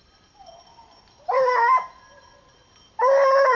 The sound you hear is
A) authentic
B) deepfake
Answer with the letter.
A